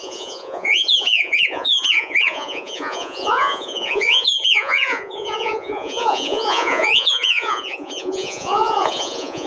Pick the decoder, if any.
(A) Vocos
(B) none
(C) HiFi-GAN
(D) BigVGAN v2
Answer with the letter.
A